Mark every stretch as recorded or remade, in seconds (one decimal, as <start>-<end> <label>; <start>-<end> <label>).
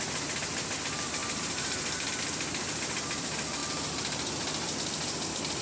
0.0-1.2 recorded; 1.2-2.1 remade; 2.1-5.6 recorded